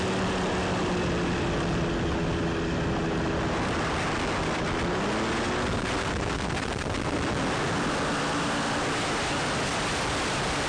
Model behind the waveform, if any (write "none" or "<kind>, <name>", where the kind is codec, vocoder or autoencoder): none